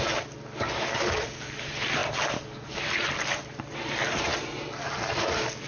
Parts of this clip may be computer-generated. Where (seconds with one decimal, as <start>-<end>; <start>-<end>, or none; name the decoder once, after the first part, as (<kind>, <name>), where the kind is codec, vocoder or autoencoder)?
none